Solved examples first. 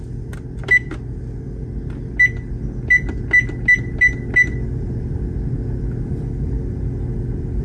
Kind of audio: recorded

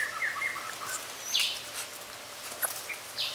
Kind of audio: recorded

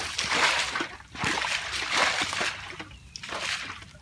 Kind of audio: recorded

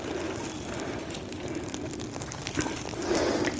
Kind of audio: recorded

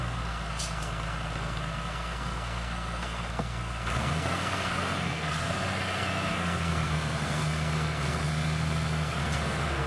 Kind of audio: remade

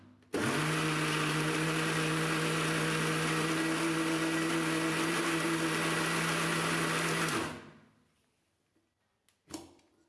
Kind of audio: recorded